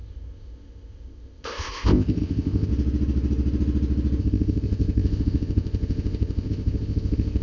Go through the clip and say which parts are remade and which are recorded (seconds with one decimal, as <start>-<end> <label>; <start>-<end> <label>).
0.0-2.7 remade; 2.7-4.2 recorded; 4.2-7.4 remade